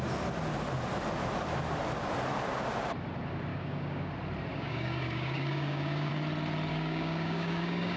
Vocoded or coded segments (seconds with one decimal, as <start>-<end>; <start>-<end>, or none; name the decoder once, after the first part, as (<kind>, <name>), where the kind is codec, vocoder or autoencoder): 3.5-4.1 (codec, DAC); 4.5-6.1; 6.7-8.0